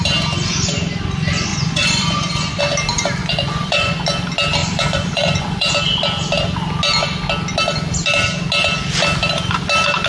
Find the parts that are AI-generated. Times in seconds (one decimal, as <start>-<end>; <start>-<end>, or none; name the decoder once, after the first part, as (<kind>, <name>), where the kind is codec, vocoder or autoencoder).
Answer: 1.5-2.6 (vocoder, Vocos); 3.2-3.9; 4.6-5.7

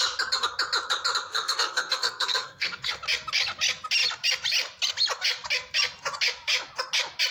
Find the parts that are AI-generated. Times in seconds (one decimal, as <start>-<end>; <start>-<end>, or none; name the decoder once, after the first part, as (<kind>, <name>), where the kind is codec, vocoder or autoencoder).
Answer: 1.3-2.9 (codec, SNAC)